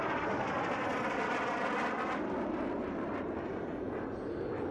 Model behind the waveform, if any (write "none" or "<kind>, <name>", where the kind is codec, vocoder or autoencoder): none